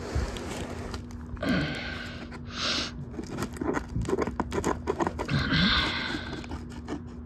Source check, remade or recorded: recorded